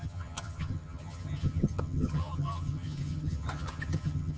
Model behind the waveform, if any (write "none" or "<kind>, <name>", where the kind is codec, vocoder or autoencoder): vocoder, HiFi-GAN